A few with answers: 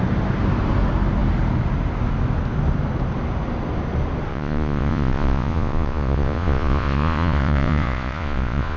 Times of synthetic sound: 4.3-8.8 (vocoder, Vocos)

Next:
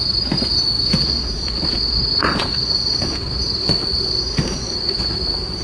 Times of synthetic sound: 1.0-3.8 (vocoder, Vocos); 4.3-5.0